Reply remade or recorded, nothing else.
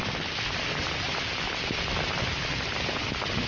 recorded